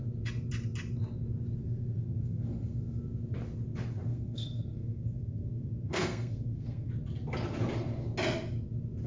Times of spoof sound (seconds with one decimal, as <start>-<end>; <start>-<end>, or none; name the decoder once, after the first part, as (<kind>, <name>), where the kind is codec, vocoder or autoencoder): 1.6-3.0 (codec, SNAC); 4.1-6.9